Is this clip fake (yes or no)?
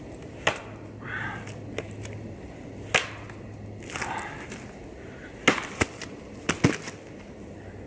no